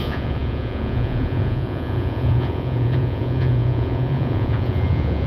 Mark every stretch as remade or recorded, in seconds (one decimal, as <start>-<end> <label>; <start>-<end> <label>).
0.0-5.3 remade